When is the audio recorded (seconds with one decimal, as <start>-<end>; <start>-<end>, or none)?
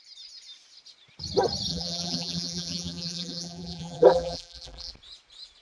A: 0.0-1.7; 4.9-5.6